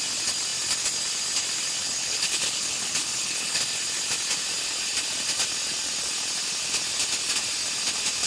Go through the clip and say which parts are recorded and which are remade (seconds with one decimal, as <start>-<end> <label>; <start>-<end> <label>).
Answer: 0.0-1.8 recorded; 1.8-3.6 remade; 3.6-8.3 recorded